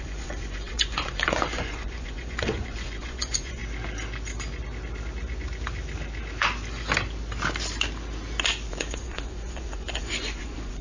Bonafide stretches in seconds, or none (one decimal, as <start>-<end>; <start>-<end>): 3.6-8.7